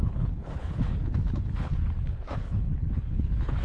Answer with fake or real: fake